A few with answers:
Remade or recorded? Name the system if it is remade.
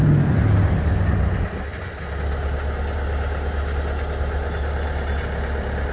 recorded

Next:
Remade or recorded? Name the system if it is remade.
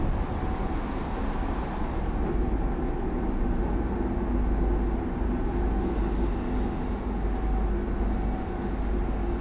recorded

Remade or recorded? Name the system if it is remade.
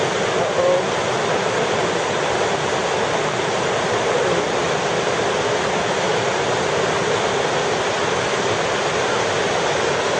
recorded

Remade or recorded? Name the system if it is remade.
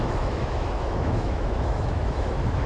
remade, autoencoder, DAC-VAE